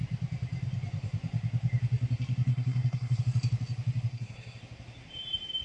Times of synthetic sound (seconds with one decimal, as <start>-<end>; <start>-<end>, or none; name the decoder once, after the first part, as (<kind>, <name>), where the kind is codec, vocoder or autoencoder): 2.5-3.2 (codec, SNAC); 4.1-4.6